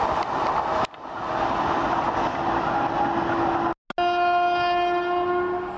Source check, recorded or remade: recorded